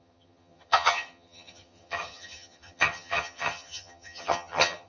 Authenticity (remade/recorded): remade